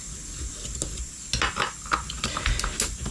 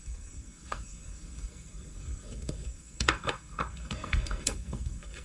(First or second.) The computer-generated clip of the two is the second